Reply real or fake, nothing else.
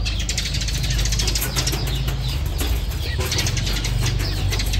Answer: real